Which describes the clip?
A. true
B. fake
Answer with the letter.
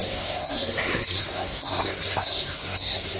B